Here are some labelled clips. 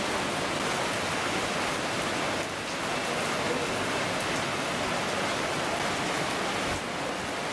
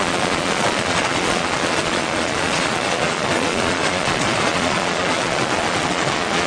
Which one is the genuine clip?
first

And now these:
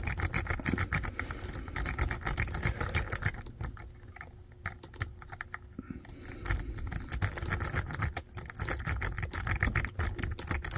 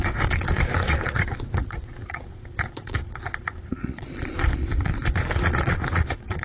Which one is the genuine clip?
first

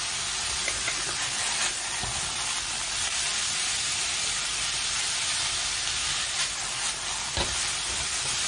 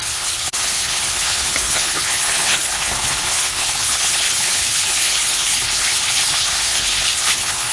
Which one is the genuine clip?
first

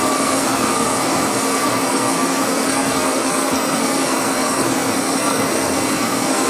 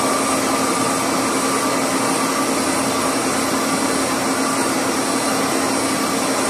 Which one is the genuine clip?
second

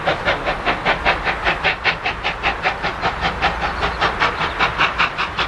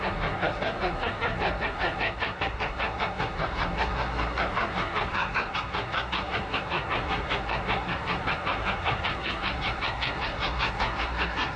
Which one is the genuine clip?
first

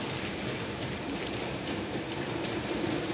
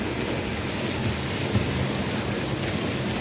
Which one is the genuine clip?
second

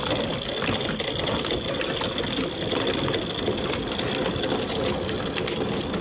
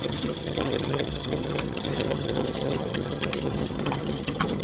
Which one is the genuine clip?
first